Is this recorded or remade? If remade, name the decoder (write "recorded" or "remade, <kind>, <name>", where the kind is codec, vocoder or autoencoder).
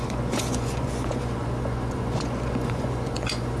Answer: remade, vocoder, Vocos